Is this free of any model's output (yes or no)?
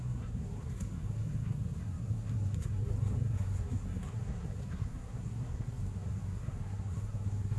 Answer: no